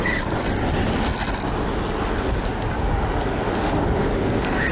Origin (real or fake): real